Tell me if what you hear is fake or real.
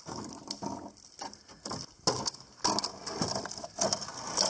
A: real